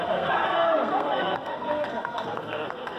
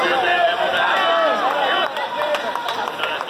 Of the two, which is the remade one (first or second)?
first